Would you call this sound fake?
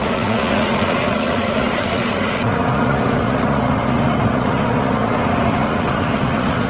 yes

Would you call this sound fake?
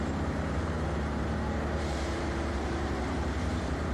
yes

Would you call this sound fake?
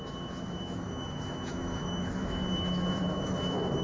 yes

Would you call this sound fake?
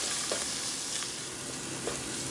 no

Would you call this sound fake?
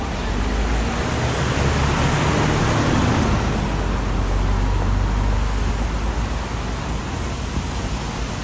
no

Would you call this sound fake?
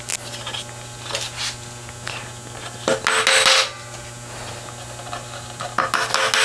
no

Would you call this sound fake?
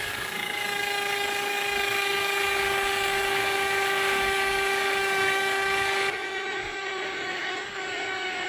yes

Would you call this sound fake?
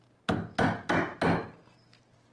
no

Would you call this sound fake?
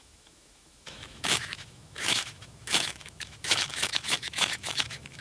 yes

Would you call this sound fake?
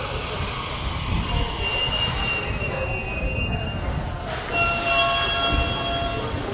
no